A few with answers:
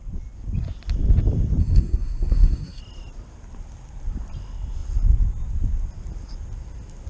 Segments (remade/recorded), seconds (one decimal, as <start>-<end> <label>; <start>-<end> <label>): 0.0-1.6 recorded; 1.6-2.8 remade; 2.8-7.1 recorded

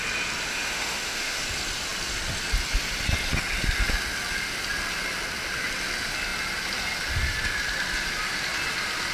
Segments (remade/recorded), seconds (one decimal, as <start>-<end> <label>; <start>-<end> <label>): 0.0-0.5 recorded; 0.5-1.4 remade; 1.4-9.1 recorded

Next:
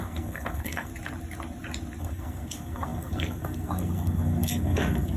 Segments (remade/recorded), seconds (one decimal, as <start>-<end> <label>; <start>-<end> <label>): 0.0-0.9 remade; 0.9-2.0 recorded; 2.0-5.2 remade